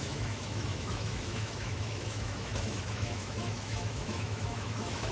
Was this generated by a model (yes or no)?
yes